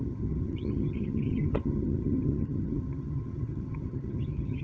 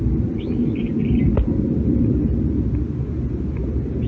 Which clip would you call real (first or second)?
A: second